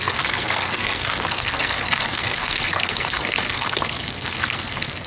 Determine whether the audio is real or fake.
fake